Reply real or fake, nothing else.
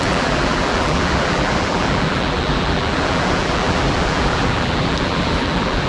fake